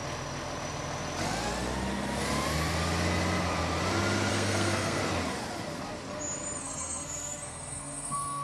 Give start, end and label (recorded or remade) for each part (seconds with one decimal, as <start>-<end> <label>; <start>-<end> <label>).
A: 0.0-4.3 recorded; 4.3-5.0 remade; 5.0-6.6 recorded; 6.6-8.4 remade